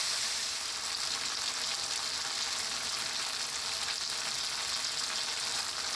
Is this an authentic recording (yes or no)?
yes